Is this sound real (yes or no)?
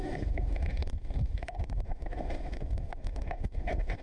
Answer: no